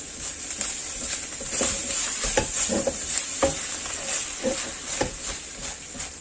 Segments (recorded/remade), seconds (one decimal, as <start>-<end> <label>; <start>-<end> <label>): 0.0-6.2 recorded